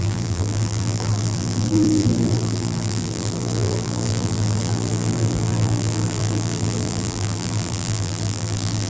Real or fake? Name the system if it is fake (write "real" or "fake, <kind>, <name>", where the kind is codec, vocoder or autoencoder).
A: fake, vocoder, BigVGAN v2